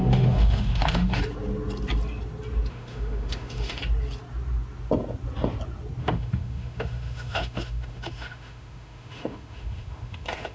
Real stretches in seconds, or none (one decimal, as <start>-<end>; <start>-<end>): 1.2-2.7; 3.8-6.0